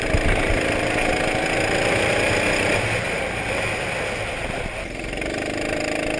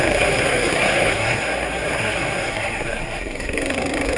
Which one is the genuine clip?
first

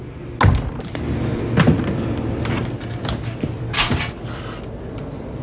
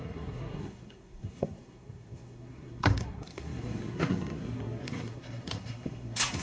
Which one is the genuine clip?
first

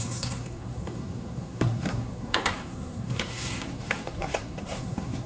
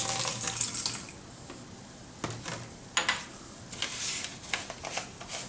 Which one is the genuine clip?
second